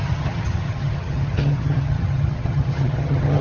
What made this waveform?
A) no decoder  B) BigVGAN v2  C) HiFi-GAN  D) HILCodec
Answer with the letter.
C